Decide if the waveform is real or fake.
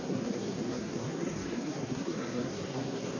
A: fake